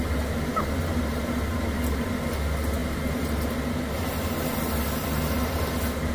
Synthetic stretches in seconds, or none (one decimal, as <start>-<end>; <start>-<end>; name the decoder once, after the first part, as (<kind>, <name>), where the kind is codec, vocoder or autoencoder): none